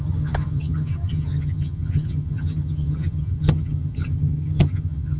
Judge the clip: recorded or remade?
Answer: remade